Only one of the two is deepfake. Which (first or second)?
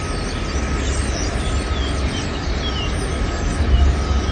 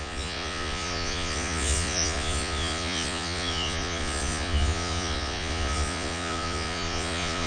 second